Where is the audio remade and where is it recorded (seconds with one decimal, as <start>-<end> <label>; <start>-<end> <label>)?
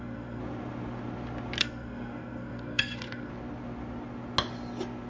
0.0-0.4 remade; 0.4-1.6 recorded; 1.6-3.3 remade; 3.3-5.1 recorded